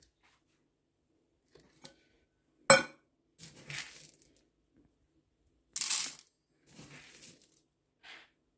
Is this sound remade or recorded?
recorded